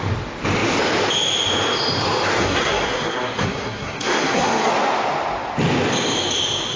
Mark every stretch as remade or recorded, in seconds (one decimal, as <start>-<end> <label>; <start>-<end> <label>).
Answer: 0.0-2.4 recorded; 2.4-4.7 remade; 4.7-6.8 recorded